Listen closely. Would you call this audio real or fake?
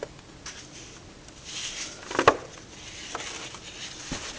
real